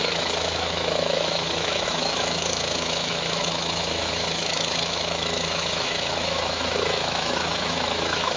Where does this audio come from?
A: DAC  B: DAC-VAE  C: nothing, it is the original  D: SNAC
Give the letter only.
B